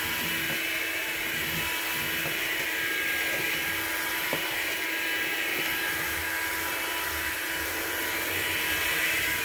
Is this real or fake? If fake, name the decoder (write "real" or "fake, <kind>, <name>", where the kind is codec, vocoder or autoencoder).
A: real